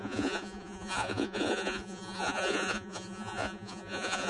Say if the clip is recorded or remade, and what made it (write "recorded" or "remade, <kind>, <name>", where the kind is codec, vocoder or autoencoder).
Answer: remade, vocoder, Vocos